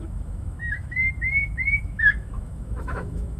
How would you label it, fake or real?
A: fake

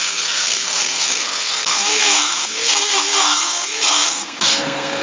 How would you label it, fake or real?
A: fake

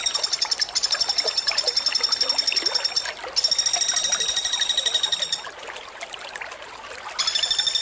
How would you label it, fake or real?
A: real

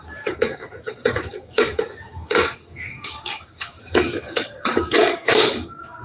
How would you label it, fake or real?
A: fake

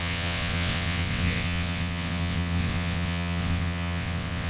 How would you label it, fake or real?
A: fake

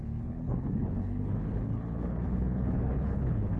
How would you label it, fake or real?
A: fake